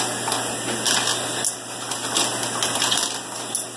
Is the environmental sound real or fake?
real